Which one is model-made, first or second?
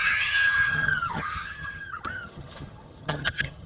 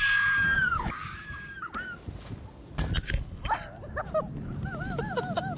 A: first